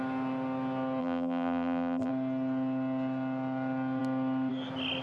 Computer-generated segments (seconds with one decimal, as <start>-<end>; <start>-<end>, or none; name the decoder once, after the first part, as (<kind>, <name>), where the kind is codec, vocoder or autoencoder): 1.0-2.1 (vocoder, BigVGAN v2)